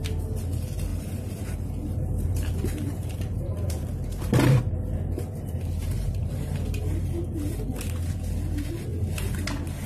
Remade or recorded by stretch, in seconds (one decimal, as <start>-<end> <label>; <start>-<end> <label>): 0.0-0.9 recorded; 0.9-4.6 remade; 4.6-5.8 recorded; 5.8-7.3 remade; 7.3-9.9 recorded